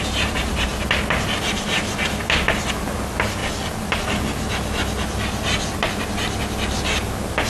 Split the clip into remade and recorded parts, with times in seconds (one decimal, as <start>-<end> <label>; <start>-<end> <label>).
0.0-0.7 remade; 0.7-1.4 recorded; 1.4-3.4 remade; 3.4-7.5 recorded